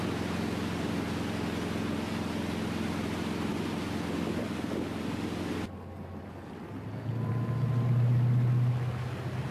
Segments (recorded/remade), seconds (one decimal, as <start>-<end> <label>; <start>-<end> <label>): 0.0-9.5 recorded